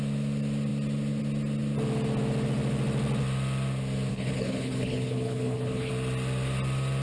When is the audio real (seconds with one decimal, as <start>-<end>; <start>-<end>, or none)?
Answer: 0.0-4.1; 5.9-7.0